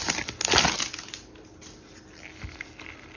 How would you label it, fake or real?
real